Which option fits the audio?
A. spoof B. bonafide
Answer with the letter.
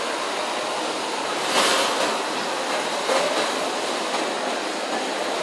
B